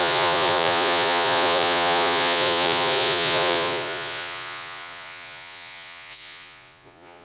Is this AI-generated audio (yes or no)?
yes